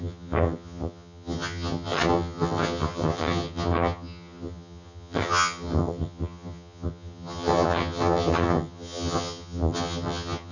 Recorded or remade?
remade